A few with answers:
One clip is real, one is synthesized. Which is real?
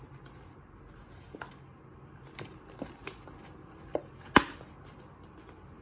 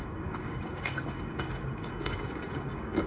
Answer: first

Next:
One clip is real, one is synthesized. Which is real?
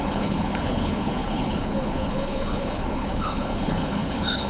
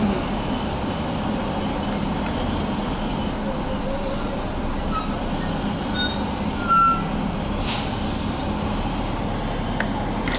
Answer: second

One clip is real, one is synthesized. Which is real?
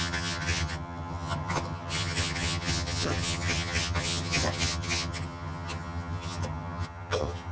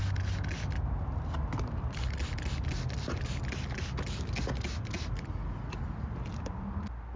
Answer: second